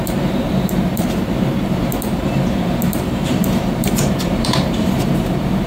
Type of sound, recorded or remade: remade